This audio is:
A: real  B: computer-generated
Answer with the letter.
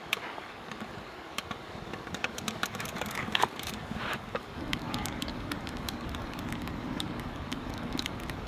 B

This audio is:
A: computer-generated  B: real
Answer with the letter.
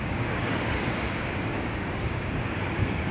A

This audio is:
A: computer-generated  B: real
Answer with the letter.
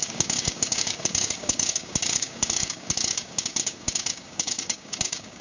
A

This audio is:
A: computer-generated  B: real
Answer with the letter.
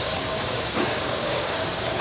A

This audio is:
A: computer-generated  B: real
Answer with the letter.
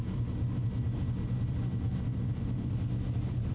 B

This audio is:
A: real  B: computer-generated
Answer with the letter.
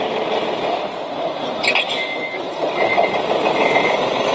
A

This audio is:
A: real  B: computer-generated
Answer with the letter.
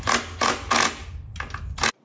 A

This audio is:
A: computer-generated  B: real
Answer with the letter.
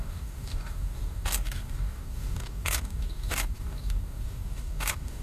A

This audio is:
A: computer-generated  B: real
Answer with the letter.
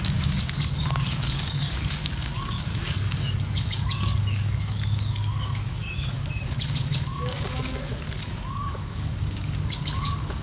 A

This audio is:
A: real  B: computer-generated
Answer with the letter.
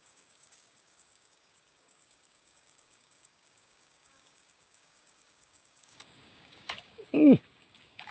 B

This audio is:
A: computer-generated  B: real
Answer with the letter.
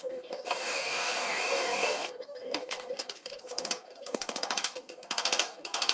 A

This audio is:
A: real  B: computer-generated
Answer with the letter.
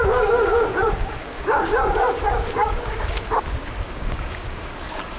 B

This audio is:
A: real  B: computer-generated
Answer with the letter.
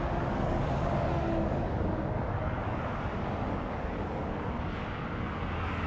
B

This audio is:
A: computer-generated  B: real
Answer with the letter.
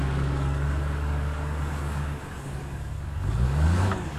A